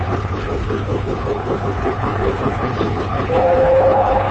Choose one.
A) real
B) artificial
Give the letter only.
B